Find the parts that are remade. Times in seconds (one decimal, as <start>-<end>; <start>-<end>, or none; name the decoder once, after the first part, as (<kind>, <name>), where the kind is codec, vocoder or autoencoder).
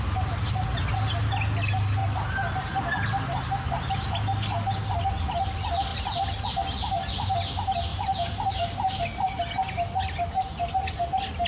7.9-9.4 (vocoder, BigVGAN v2)